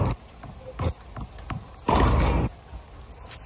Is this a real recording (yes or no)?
yes